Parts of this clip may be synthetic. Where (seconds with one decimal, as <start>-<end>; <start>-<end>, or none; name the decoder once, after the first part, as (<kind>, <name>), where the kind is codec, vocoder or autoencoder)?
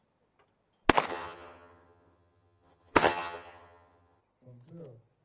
1.1-4.2 (vocoder, HiFi-GAN)